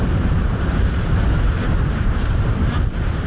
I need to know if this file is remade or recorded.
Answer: remade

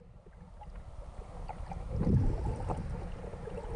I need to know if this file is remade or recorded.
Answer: recorded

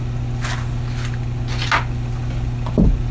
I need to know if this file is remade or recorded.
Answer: recorded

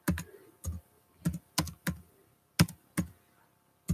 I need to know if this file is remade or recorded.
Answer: recorded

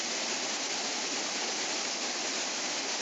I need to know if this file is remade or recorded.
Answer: recorded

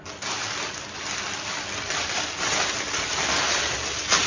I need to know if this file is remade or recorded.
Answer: remade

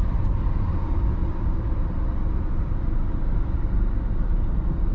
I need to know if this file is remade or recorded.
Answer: remade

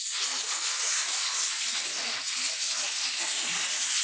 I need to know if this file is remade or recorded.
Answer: recorded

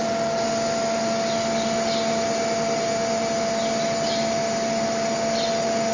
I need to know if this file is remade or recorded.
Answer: recorded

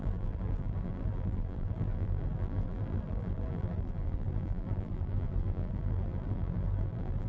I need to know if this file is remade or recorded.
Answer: remade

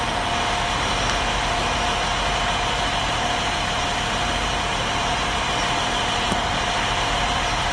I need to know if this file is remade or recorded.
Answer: remade